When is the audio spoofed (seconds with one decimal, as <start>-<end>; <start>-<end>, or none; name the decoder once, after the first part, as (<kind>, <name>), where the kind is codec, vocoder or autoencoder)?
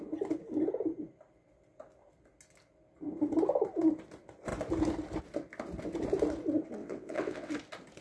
6.8-7.5 (vocoder, WaveNeXt)